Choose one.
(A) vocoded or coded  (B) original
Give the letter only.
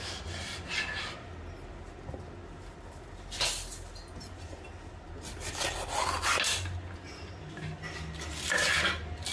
B